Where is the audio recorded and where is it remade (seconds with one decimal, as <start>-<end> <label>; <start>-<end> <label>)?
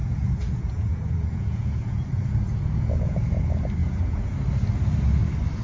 0.0-3.4 remade; 3.4-3.8 recorded; 3.8-4.3 remade; 4.3-5.6 recorded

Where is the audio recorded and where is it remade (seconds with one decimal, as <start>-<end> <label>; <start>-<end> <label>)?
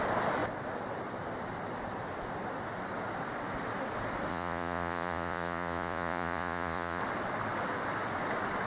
0.0-4.3 recorded; 4.3-7.0 remade; 7.0-8.7 recorded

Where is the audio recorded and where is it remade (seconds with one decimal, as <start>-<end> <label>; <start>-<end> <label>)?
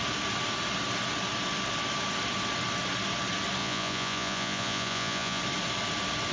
0.0-3.6 recorded; 3.6-5.4 remade; 5.4-6.3 recorded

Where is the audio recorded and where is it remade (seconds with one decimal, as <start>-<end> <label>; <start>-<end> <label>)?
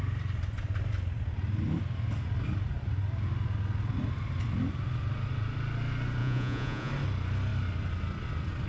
0.0-6.2 recorded; 6.2-6.9 remade; 6.9-8.7 recorded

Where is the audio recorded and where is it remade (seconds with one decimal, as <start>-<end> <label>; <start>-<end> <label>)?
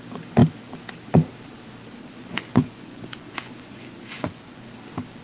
0.0-2.0 recorded; 2.0-4.7 remade; 4.7-5.2 recorded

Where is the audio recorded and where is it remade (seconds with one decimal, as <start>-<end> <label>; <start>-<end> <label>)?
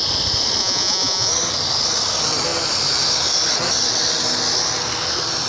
0.0-0.6 recorded; 0.6-1.3 remade; 1.3-5.5 recorded